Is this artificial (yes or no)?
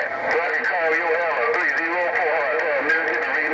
no